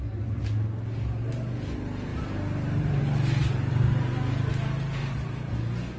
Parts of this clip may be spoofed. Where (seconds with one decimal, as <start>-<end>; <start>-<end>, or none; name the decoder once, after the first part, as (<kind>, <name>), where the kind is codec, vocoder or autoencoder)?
2.1-3.0 (vocoder, BigVGAN v2); 3.4-3.9; 5.0-5.5